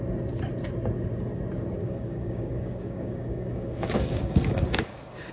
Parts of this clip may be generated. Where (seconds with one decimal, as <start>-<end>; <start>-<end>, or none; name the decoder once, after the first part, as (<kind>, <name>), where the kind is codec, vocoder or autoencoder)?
1.8-5.3 (codec, DAC)

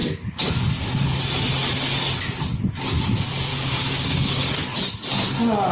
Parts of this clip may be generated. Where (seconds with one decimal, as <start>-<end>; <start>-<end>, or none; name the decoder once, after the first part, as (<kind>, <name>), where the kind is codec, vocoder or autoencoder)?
3.5-4.5 (codec, DAC)

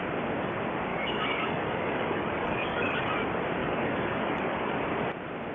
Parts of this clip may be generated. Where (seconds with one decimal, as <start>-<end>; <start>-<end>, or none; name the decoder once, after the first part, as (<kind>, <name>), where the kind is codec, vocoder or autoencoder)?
0.9-3.0 (codec, DAC); 3.6-4.8

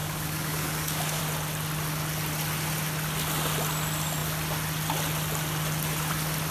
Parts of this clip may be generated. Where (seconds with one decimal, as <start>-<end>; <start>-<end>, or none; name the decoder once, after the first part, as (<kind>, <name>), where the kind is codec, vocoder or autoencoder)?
0.0-1.2 (codec, DAC)

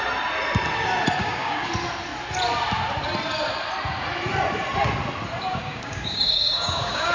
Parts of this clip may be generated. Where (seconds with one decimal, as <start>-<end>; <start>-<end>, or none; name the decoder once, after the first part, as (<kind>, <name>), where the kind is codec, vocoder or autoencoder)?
1.2-1.7 (codec, DAC); 5.5-7.1

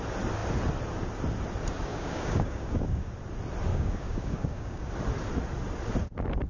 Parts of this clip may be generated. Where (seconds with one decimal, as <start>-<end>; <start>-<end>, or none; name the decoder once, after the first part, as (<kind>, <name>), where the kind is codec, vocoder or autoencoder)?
1.9-3.1 (codec, DAC); 3.7-4.9